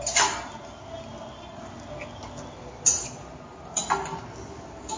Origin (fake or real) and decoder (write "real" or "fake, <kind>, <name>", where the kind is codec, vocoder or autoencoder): real